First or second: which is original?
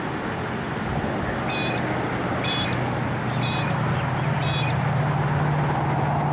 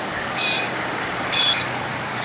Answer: first